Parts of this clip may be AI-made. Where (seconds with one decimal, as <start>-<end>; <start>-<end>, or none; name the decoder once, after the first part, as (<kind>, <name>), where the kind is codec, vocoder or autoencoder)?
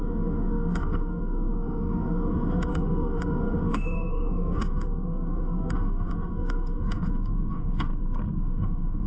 0.0-7.9 (autoencoder, DAC-VAE); 8.4-9.1